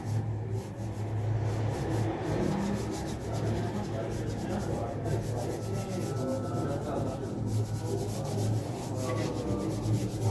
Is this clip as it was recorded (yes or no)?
yes